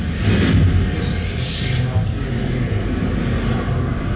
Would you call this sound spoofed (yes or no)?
no